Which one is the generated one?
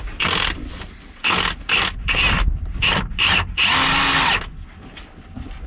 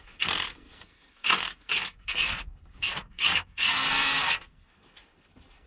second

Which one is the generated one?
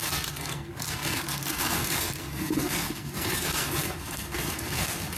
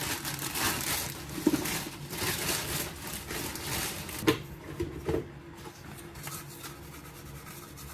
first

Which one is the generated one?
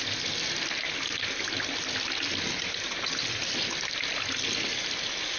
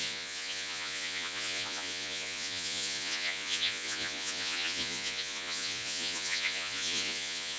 second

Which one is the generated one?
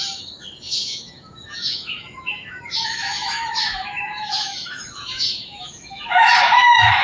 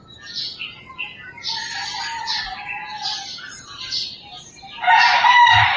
first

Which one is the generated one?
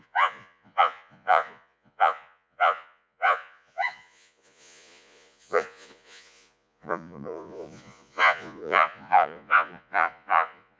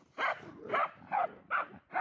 first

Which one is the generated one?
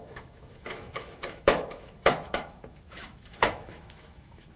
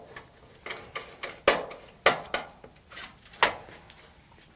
first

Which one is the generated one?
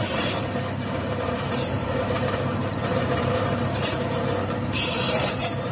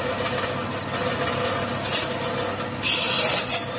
first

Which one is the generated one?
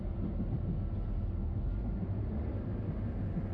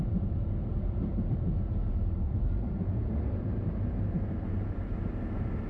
second